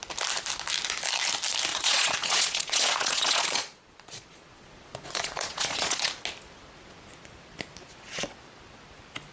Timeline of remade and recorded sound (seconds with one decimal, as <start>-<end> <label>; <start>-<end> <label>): 0.0-1.7 recorded; 1.7-6.1 remade; 6.1-9.3 recorded